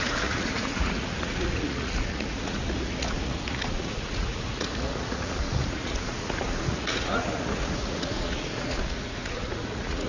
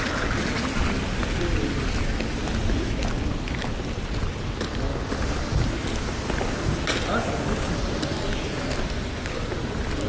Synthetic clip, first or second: first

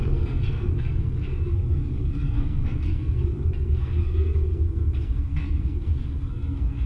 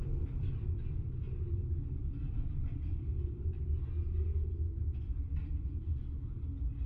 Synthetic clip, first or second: first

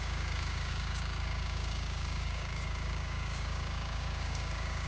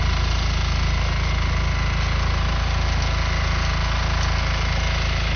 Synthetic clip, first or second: first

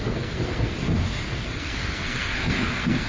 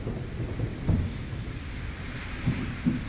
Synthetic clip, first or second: first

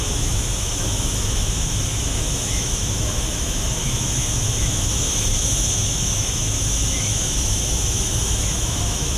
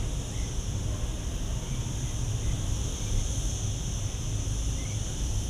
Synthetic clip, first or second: first